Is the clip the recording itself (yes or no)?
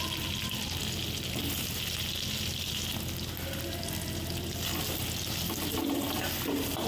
yes